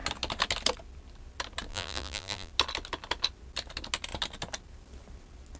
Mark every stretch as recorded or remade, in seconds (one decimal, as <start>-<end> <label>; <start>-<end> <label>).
0.0-1.7 recorded; 1.7-2.5 remade; 2.5-5.6 recorded